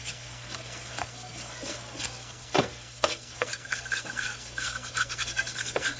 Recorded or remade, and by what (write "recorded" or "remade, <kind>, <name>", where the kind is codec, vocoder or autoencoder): remade, codec, SNAC